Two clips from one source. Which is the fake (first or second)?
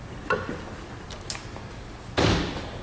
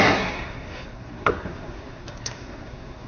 second